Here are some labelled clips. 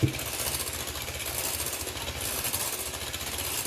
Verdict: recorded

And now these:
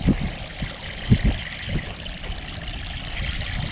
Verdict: recorded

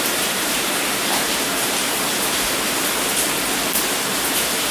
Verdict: remade